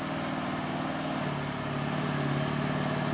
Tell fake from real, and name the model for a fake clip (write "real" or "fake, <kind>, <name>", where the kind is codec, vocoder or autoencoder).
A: real